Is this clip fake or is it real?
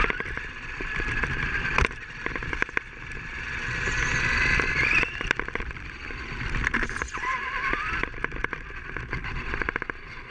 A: fake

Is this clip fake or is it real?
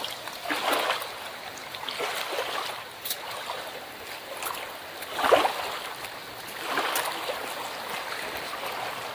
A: real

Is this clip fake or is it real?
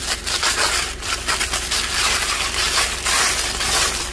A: fake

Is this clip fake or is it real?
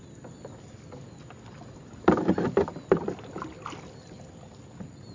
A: real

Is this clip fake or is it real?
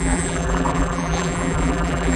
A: fake